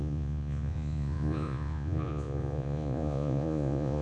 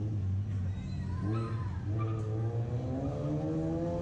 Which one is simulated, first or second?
first